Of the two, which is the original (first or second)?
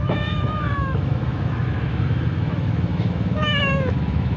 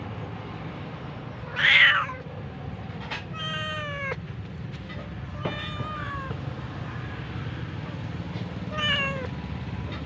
second